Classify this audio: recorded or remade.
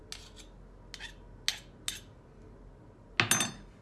recorded